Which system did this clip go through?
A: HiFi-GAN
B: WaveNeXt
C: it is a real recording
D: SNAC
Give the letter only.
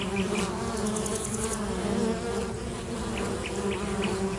C